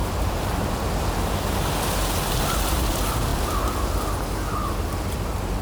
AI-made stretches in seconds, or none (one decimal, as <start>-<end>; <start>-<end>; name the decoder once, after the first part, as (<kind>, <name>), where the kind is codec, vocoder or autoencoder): 0.0-0.7 (vocoder, BigVGAN v2)